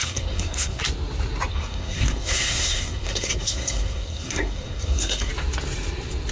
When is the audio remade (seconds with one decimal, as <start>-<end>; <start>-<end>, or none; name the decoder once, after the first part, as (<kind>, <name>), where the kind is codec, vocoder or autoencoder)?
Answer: 0.0-0.8 (codec, SNAC); 1.5-5.3